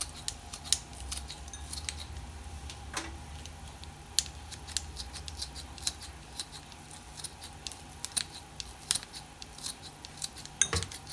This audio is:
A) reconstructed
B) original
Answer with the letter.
B